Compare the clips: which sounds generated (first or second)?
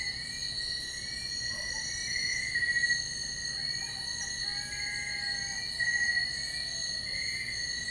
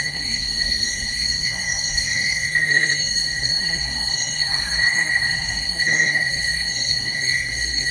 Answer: second